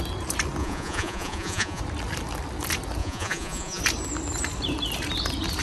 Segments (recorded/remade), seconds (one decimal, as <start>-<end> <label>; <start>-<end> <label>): 0.0-0.6 recorded; 0.6-1.8 remade; 1.8-3.0 recorded; 3.0-3.8 remade; 3.8-5.6 recorded